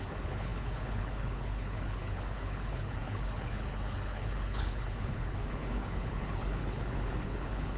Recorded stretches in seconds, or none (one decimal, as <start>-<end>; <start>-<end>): none